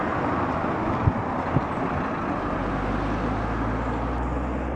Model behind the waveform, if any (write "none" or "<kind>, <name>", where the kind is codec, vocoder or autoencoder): none